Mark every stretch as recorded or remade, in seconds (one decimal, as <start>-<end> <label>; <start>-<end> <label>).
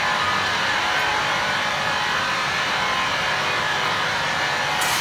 0.0-1.1 recorded; 1.1-4.1 remade; 4.1-5.0 recorded